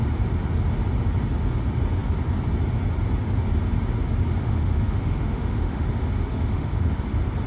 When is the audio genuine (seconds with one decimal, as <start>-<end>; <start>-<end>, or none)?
0.0-4.4; 6.9-7.5